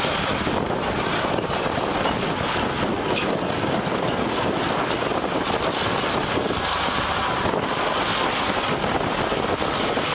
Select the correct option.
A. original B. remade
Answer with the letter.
A